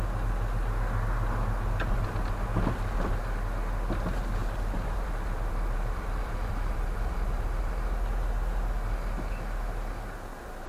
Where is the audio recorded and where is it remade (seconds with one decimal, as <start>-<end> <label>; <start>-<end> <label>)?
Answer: 0.0-4.4 recorded; 4.4-7.7 remade; 7.7-10.7 recorded